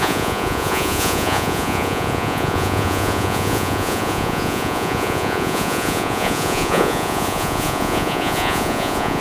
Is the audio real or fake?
fake